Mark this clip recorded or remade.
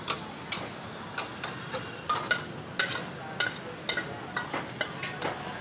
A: recorded